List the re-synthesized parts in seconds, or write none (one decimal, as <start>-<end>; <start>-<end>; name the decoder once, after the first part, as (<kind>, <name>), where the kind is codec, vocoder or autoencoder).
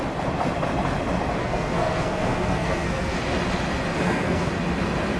1.4-3.2 (codec, SNAC); 3.9-4.5